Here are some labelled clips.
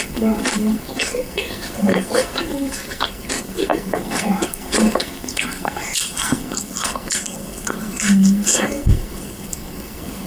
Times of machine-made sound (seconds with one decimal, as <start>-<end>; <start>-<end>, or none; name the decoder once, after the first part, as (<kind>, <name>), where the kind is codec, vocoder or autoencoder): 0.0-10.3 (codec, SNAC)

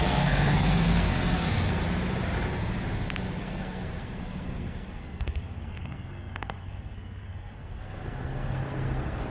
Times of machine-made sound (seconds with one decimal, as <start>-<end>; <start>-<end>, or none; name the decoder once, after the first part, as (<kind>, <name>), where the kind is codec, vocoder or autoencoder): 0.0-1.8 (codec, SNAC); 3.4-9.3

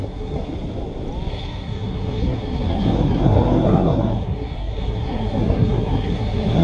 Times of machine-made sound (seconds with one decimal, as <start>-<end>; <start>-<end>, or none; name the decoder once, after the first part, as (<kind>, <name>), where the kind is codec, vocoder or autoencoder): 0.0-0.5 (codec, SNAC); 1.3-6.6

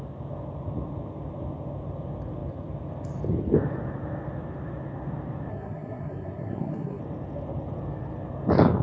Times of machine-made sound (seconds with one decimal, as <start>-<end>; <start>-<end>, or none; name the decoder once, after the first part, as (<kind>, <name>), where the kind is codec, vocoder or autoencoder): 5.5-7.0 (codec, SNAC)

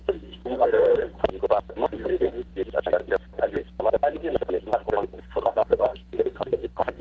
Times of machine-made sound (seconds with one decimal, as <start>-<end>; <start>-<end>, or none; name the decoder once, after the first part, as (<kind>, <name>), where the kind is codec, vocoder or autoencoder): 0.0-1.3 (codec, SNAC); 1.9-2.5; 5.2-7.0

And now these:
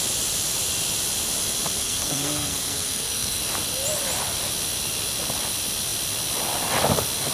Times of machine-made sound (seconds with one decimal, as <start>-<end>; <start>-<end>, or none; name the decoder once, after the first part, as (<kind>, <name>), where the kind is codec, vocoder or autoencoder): 1.8-3.4 (codec, SNAC)

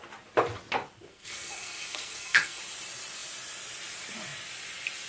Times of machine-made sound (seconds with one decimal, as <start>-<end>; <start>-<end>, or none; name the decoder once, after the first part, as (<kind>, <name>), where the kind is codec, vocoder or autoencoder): 1.1-2.6 (codec, SNAC)

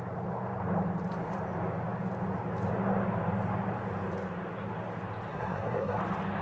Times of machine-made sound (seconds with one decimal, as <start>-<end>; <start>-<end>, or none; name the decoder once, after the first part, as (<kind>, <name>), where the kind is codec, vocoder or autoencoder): 5.3-6.0 (codec, SNAC)